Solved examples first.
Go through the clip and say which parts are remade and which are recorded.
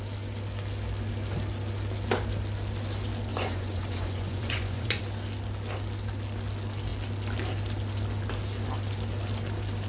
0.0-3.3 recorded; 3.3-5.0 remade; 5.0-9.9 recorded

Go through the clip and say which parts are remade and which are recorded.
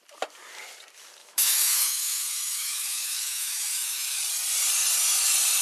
0.0-1.2 recorded; 1.2-4.2 remade; 4.2-5.6 recorded